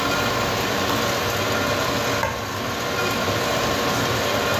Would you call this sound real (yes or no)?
yes